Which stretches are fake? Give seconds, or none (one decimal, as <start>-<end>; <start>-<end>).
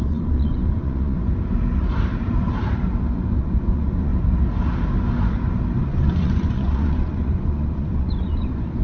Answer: 0.0-1.2; 3.4-4.1; 5.8-8.8